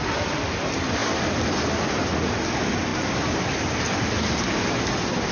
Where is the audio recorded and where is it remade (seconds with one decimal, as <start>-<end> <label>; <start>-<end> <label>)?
0.0-5.3 recorded